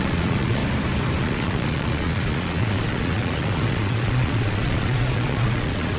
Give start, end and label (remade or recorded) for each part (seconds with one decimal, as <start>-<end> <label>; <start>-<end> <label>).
0.0-0.6 remade; 0.6-1.2 recorded; 1.2-6.0 remade